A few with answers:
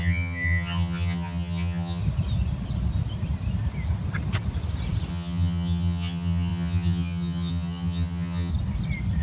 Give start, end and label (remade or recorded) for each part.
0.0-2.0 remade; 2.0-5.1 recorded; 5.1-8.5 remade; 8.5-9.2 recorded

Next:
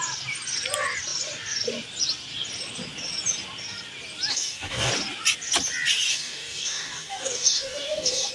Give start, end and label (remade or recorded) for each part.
0.0-4.3 recorded; 4.3-4.9 remade; 4.9-6.1 recorded; 6.1-8.3 remade

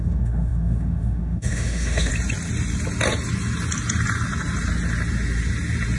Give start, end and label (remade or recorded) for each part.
0.0-2.1 remade; 2.1-6.0 recorded

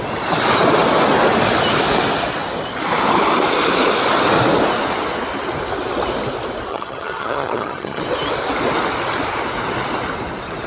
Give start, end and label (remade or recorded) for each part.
0.0-6.7 recorded; 6.7-8.0 remade; 8.0-10.7 recorded

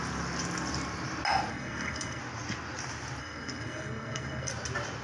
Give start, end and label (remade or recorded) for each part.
0.0-1.5 recorded; 1.5-2.2 remade; 2.2-3.2 recorded; 3.2-4.5 remade; 4.5-5.0 recorded

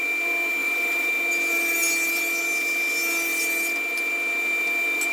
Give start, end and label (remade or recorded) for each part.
0.0-0.6 recorded; 0.6-1.1 remade; 1.1-5.1 recorded

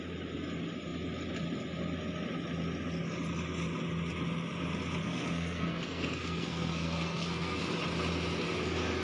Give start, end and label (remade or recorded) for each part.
0.0-5.0 recorded; 5.0-7.7 remade; 7.7-9.0 recorded